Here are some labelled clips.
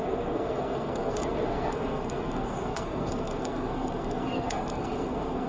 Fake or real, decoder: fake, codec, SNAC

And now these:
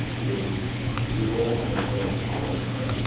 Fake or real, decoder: fake, codec, HILCodec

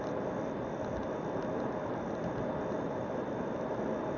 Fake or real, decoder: real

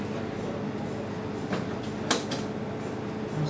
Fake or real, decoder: real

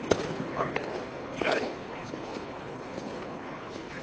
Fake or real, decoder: fake, codec, HILCodec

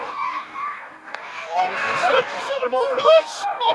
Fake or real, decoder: fake, codec, DAC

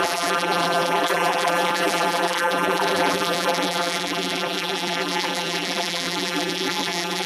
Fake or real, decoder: fake, vocoder, BigVGAN v2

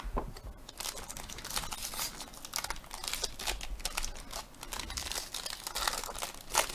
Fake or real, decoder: real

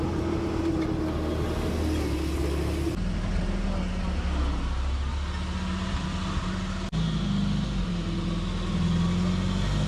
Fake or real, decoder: real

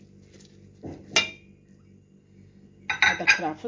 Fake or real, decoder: real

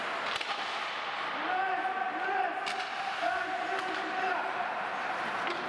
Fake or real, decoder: real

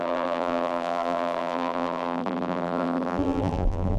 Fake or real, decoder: fake, vocoder, BigVGAN v2